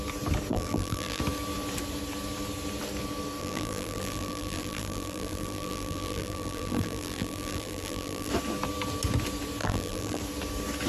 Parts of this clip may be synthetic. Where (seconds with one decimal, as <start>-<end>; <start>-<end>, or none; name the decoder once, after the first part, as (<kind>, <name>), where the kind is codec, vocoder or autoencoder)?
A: 0.5-1.2 (vocoder, BigVGAN v2); 3.4-8.3; 9.6-10.2